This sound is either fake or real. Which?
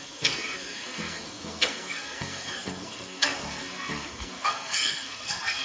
fake